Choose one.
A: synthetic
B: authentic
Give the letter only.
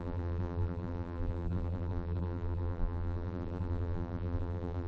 A